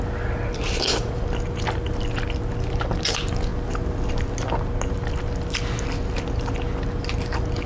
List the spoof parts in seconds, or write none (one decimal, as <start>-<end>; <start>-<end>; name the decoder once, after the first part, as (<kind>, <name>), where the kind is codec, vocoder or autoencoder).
none